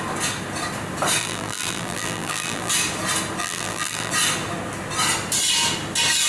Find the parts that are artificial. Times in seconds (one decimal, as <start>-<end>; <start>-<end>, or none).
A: 1.2-2.7; 3.4-4.1